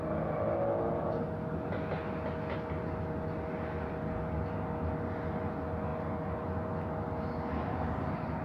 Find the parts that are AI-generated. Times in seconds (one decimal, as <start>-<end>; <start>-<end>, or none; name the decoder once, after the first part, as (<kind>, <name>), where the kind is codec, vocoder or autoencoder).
none